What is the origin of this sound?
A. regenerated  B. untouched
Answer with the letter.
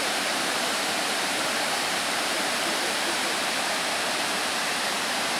A